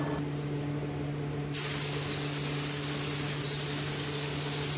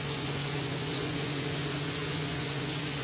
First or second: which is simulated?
second